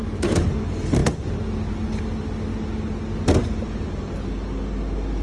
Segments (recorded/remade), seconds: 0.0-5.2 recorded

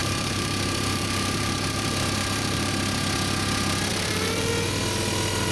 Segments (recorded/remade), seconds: 0.0-2.7 remade; 2.7-3.9 recorded; 3.9-4.5 remade; 4.5-5.5 recorded

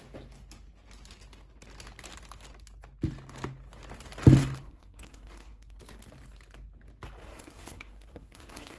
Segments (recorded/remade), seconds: 0.0-4.4 recorded; 4.4-5.8 remade; 5.8-7.2 recorded; 7.2-8.8 remade

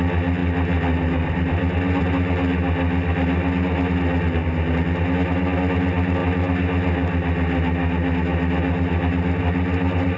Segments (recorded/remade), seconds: 0.0-0.4 recorded; 0.4-2.1 remade; 2.1-10.2 recorded

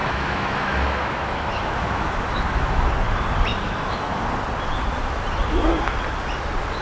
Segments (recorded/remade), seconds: 0.0-2.9 remade; 2.9-3.5 recorded; 3.5-4.2 remade; 4.2-6.8 recorded

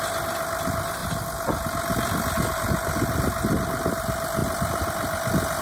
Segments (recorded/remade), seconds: 0.0-5.6 recorded

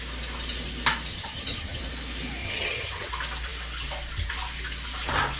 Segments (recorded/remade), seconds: 0.0-1.1 recorded; 1.1-1.8 remade; 1.8-2.4 recorded; 2.4-3.1 remade; 3.1-5.4 recorded